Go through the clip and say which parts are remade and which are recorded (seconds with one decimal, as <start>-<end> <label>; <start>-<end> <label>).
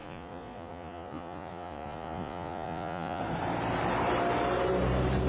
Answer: 0.0-3.2 remade; 3.2-5.3 recorded